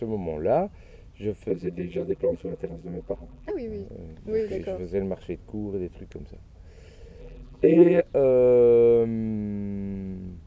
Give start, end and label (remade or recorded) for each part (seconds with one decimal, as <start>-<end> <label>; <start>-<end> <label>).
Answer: 0.0-1.5 recorded; 1.5-3.5 remade; 3.5-7.2 recorded; 7.2-8.0 remade; 8.0-10.5 recorded